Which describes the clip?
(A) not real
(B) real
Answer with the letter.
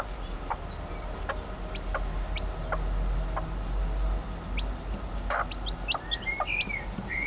B